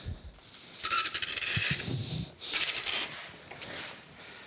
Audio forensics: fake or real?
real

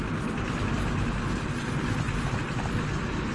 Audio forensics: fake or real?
real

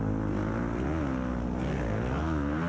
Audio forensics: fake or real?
real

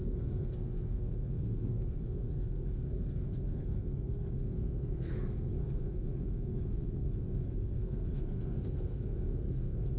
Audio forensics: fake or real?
fake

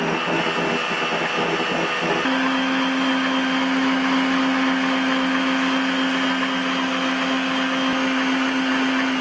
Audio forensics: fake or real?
real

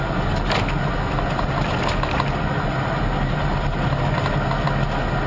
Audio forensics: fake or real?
real